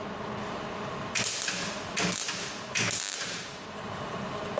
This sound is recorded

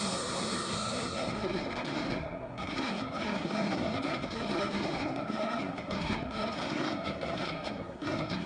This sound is remade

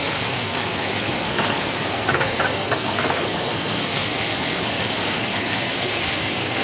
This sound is remade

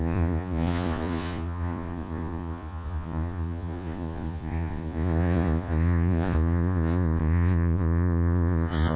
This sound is remade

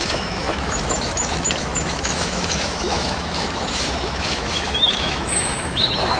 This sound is remade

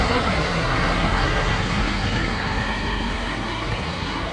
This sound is remade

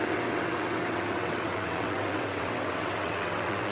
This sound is remade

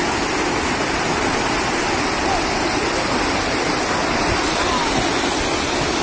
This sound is recorded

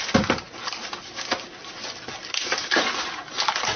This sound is recorded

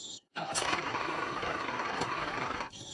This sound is remade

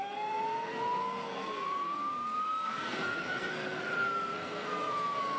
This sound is remade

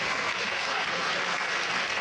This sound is remade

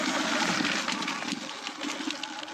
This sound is recorded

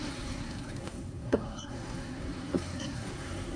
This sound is remade